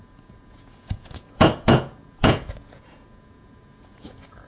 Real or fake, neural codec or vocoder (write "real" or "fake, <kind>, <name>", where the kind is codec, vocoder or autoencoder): fake, vocoder, Vocos